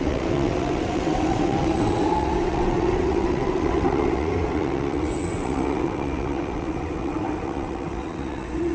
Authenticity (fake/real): fake